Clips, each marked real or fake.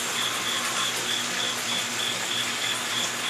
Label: real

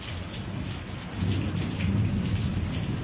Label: real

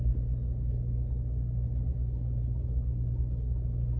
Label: real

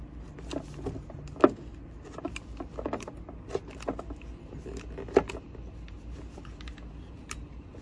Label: real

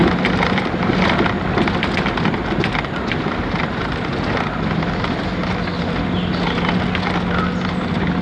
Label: real